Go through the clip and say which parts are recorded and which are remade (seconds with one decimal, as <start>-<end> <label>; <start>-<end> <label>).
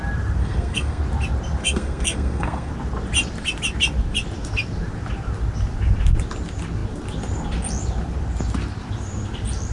0.0-0.4 recorded; 0.4-1.0 remade; 1.0-1.6 recorded; 1.6-2.7 remade; 2.7-9.7 recorded